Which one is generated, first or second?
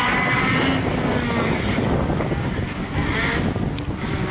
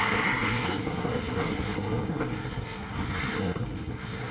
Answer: second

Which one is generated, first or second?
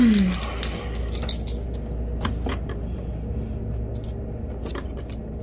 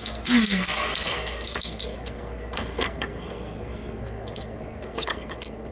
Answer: second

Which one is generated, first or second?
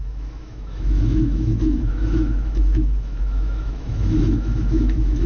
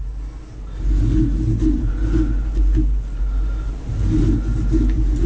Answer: first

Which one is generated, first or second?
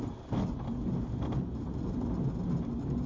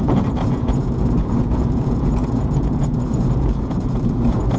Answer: second